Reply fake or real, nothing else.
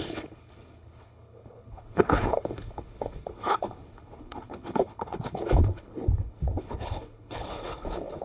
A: fake